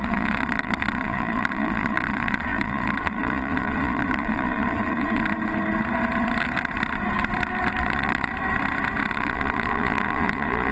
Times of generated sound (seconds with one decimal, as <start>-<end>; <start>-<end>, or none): 0.0-5.2; 7.8-8.3; 9.1-10.7